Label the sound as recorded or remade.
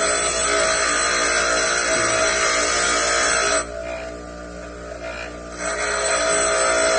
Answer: recorded